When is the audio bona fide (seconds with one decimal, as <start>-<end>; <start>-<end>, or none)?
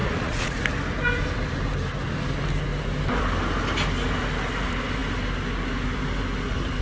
0.6-6.8